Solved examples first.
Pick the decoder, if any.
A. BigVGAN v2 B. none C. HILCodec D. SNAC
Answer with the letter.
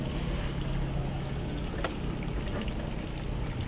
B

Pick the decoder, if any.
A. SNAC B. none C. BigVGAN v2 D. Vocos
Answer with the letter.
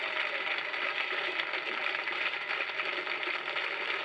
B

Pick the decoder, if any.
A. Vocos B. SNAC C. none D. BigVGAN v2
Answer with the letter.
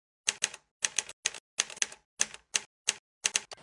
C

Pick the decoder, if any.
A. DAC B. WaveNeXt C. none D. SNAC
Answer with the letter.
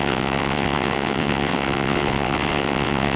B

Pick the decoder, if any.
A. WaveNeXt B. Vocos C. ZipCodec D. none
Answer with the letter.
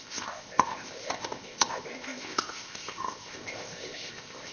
C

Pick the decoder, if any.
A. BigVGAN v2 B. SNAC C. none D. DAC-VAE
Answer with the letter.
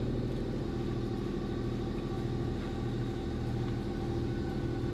C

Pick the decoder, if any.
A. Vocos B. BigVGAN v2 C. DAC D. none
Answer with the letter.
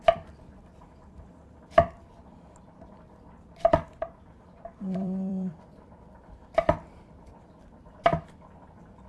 B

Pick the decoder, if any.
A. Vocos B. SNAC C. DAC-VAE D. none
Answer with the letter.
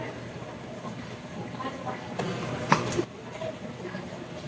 D